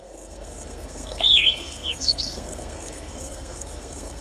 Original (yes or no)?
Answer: no